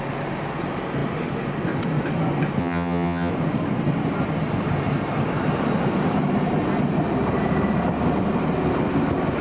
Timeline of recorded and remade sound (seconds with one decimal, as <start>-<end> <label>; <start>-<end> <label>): 0.0-2.6 recorded; 2.6-3.3 remade; 3.3-9.4 recorded